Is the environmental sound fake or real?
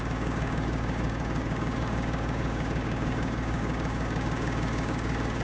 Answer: fake